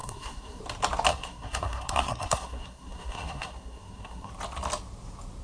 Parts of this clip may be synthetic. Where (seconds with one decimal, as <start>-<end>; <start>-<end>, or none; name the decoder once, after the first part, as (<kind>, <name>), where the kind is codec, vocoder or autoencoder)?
0.0-0.6 (codec, SNAC); 1.1-4.3